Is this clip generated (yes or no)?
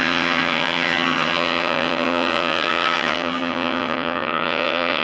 yes